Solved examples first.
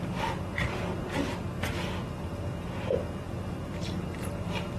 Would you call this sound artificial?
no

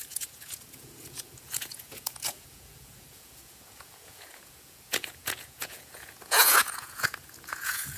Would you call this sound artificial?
yes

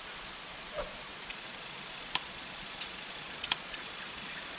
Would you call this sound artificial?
yes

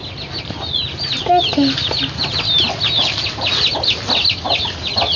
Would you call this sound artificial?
no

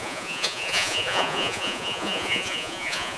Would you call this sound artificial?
yes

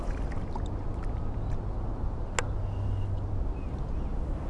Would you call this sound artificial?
no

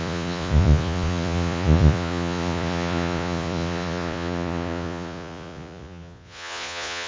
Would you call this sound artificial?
yes